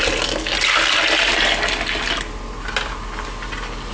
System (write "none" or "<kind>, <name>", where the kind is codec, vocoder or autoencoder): none